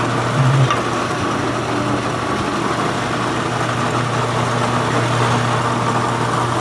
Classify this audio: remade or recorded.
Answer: recorded